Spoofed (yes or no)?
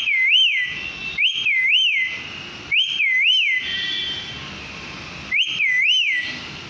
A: no